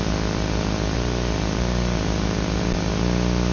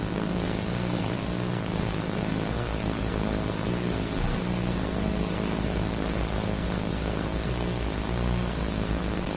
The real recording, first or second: first